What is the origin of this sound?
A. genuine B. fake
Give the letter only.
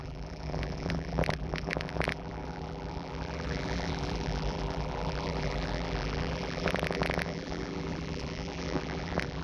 B